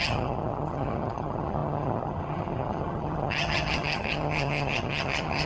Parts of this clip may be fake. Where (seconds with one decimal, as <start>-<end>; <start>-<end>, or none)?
0.0-5.5